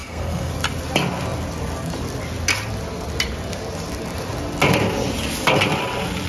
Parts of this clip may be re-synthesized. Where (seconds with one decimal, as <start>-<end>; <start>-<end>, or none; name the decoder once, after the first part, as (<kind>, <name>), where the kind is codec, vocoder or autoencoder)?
0.0-0.5 (codec, SNAC)